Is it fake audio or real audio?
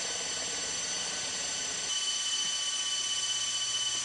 real